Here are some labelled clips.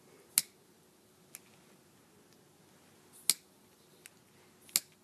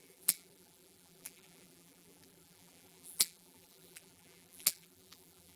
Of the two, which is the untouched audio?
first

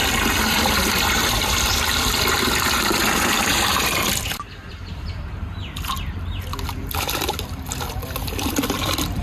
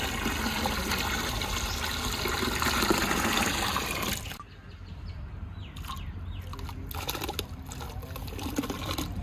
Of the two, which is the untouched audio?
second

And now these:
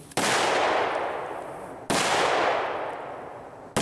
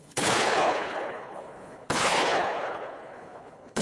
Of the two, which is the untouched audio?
first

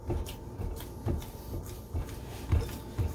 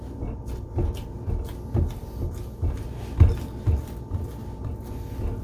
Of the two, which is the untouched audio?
second